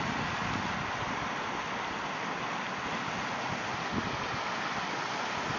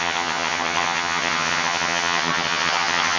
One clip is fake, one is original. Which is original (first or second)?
first